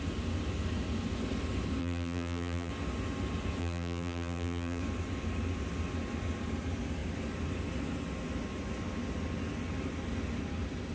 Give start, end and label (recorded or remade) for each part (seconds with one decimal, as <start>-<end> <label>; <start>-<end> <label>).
0.0-1.8 recorded; 1.8-2.7 remade; 2.7-3.6 recorded; 3.6-4.8 remade; 4.8-10.9 recorded